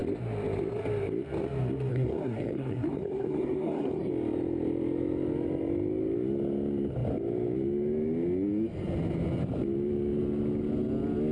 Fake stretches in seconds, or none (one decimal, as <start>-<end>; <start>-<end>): 1.9-4.1